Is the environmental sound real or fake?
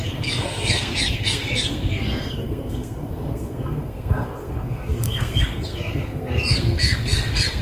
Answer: fake